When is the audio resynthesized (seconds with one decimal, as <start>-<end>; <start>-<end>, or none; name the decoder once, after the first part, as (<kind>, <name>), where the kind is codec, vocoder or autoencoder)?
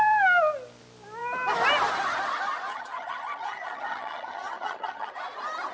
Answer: 2.7-5.1 (vocoder, HiFi-GAN)